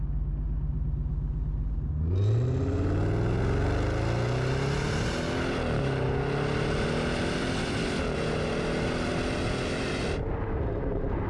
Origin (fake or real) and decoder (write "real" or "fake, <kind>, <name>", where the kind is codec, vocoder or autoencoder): real